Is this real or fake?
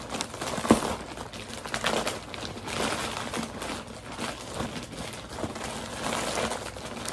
real